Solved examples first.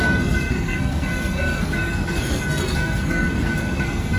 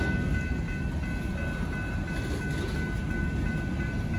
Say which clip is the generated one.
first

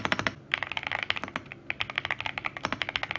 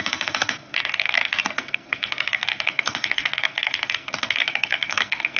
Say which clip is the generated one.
second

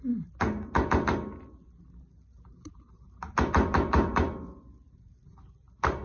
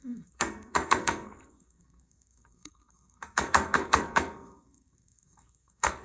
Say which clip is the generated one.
second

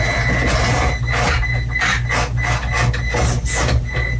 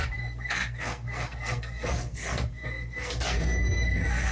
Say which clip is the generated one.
second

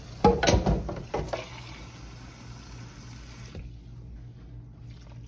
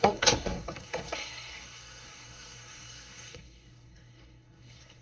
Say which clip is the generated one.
second